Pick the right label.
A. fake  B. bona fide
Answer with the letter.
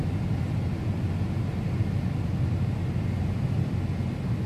B